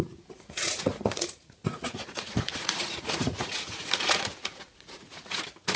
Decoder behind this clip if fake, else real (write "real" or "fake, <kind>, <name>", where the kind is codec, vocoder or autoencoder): fake, vocoder, Vocos